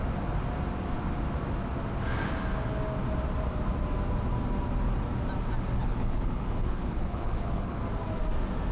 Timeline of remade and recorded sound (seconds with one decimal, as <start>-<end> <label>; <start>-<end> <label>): 0.0-5.8 recorded; 5.8-7.8 remade; 7.8-8.7 recorded